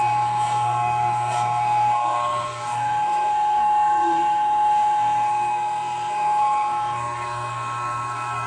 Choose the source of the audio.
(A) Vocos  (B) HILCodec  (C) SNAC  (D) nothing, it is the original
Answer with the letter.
C